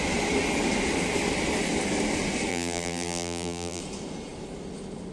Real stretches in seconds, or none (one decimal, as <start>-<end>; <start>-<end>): 0.0-2.5; 3.8-5.1